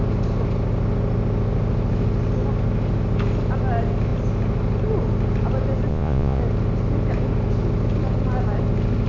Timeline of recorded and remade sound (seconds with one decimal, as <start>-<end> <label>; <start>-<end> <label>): 0.0-5.9 recorded; 5.9-6.4 remade; 6.4-9.1 recorded